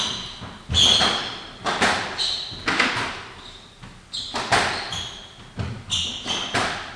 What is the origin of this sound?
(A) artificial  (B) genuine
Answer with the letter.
B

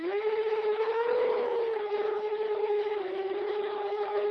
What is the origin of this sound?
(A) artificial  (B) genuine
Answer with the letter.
A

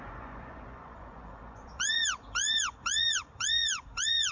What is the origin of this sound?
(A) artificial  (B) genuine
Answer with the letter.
A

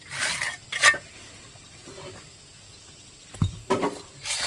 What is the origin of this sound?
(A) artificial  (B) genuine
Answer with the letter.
B